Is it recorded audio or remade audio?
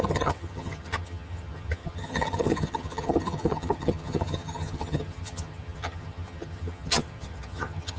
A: remade